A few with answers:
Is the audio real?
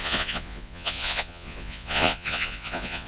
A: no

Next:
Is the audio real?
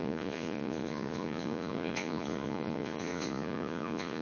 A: no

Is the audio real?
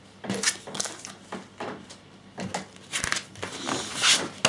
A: yes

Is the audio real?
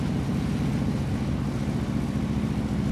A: yes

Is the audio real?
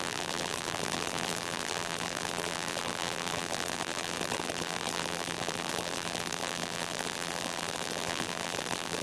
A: no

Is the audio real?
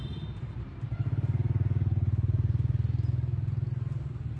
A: yes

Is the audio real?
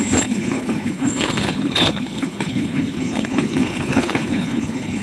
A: no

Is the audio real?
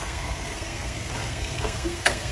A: no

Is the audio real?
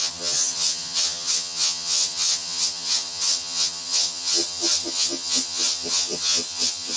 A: no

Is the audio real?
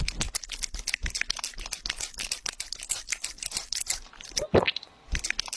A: yes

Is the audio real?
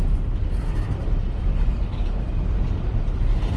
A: yes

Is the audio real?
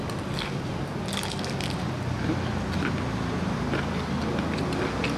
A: yes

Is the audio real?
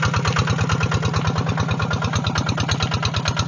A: yes